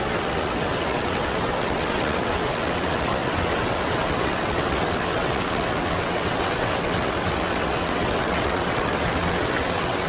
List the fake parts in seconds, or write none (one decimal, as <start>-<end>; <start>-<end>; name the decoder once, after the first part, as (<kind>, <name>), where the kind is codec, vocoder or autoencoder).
0.0-10.1 (vocoder, WaveNeXt)